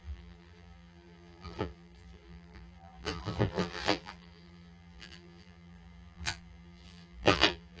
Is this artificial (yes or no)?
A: yes